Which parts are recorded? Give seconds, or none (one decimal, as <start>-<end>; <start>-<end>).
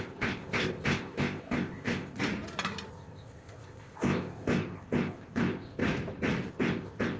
2.2-2.9; 5.8-6.5